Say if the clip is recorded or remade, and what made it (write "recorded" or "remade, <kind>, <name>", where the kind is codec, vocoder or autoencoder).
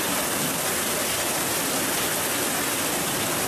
recorded